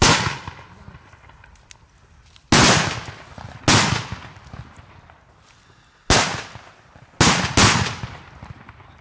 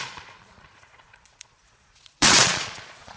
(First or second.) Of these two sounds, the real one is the first